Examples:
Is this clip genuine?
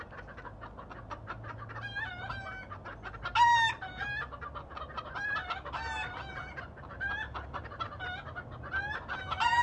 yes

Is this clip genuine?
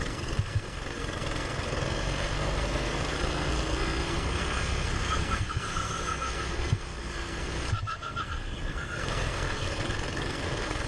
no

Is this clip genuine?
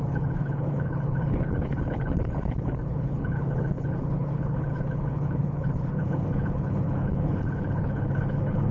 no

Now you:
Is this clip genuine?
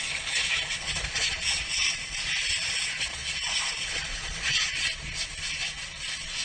no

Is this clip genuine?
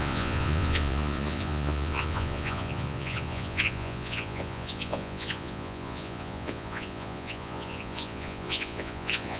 no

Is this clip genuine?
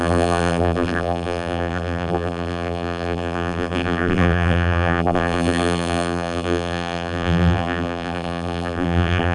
no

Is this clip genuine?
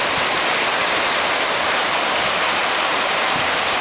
yes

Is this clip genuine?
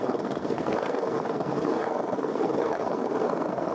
no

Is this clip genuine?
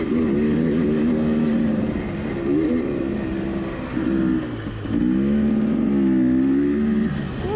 yes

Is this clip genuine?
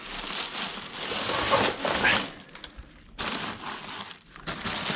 yes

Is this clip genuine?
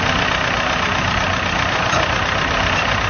yes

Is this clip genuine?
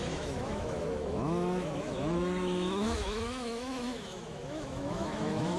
no